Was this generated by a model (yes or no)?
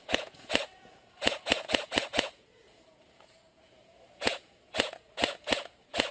yes